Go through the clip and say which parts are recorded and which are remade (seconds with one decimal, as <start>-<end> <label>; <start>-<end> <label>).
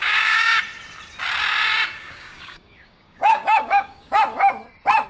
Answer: 0.0-0.6 remade; 0.6-2.0 recorded; 2.0-4.2 remade; 4.2-5.1 recorded